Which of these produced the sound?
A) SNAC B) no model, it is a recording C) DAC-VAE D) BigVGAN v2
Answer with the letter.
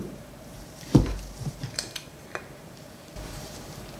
D